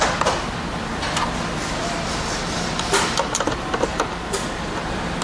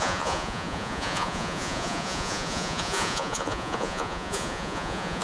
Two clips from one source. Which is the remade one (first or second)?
second